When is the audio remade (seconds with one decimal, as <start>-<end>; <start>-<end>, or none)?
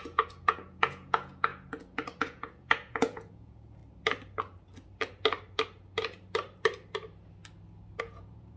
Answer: 0.0-1.5; 2.2-3.8; 8.0-8.6